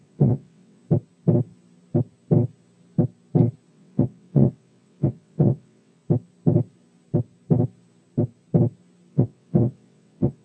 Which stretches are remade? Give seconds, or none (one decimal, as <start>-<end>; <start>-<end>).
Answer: 0.0-0.8; 3.7-6.0; 9.1-10.4